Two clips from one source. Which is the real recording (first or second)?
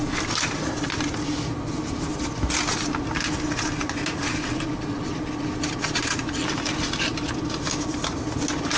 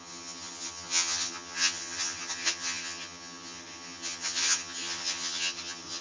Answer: first